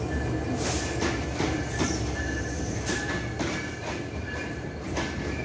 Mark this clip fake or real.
real